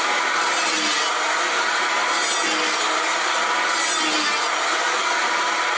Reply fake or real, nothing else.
real